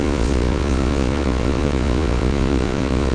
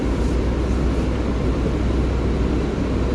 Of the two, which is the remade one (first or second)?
first